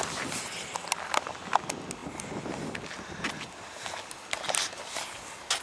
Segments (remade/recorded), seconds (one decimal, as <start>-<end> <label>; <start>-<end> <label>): 0.0-5.6 recorded